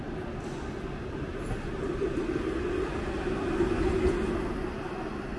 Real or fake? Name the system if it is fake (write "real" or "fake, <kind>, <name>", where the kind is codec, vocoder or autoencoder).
real